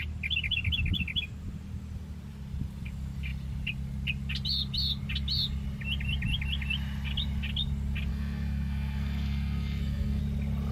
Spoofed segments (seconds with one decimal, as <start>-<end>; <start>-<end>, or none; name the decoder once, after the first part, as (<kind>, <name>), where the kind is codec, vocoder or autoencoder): 8.1-10.2 (codec, SNAC)

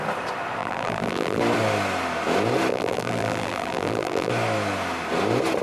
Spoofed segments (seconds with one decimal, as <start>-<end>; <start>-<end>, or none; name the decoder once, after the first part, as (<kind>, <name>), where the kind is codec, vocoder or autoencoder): 0.6-1.4 (vocoder, BigVGAN v2); 2.7-4.3

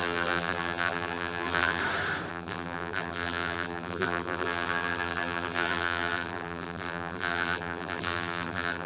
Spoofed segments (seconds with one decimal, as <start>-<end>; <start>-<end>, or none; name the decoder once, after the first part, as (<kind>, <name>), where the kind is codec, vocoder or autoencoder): 0.0-1.8 (vocoder, BigVGAN v2); 2.3-8.9

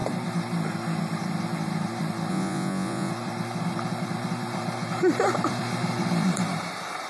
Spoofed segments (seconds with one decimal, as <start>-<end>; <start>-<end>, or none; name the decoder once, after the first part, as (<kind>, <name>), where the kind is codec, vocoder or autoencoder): 2.3-3.1 (vocoder, Vocos)